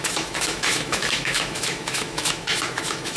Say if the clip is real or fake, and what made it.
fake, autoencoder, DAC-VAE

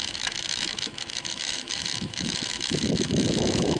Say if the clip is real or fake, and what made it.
fake, autoencoder, DAC-VAE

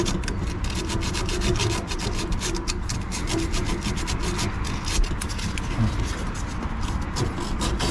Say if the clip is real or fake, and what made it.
real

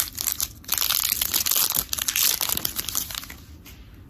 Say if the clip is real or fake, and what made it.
real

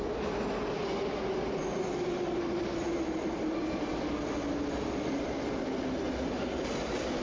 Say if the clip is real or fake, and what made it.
real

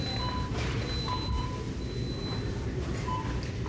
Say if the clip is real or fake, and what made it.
real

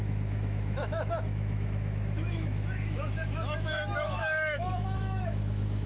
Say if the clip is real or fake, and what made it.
fake, autoencoder, DAC-VAE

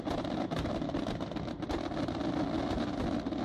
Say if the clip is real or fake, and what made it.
real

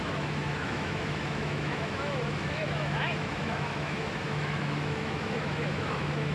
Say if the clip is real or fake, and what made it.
fake, autoencoder, DAC-VAE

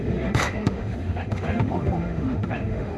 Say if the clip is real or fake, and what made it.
fake, autoencoder, DAC-VAE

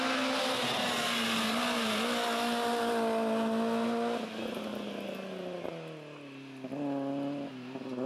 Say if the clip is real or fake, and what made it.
real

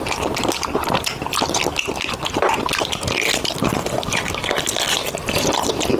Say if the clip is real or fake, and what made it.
real